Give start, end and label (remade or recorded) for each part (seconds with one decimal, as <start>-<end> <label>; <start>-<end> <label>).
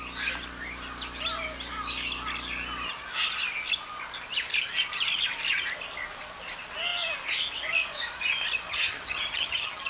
0.0-8.7 recorded; 8.7-9.9 remade